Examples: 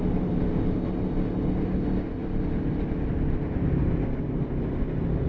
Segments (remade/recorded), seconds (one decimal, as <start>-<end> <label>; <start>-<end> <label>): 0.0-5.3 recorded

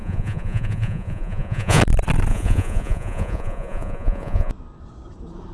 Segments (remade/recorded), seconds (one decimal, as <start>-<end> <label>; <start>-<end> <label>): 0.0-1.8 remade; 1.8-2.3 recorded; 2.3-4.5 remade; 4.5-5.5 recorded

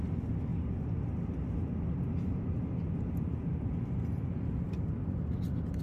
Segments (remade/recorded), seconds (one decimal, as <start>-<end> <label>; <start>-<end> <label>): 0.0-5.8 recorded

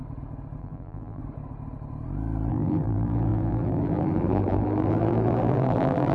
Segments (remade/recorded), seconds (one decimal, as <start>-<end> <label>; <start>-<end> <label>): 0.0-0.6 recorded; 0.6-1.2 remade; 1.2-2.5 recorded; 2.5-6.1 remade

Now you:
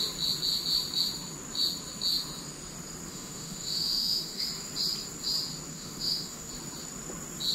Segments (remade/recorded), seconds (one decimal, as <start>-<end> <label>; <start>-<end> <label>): 0.0-3.1 recorded; 3.1-4.4 remade; 4.4-5.7 recorded; 5.7-6.5 remade; 6.5-7.5 recorded

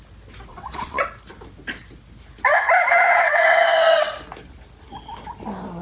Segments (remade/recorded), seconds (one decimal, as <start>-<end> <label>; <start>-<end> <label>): 0.0-0.5 recorded; 0.5-1.0 remade; 1.0-2.9 recorded; 2.9-4.1 remade; 4.1-5.8 recorded

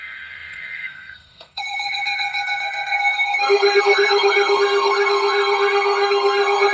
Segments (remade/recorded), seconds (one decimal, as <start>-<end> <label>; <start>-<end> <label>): 0.0-6.7 remade

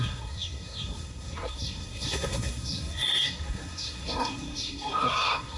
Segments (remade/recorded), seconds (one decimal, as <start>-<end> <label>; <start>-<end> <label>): 0.0-5.6 remade